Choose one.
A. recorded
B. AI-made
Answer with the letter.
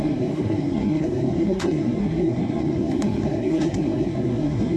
B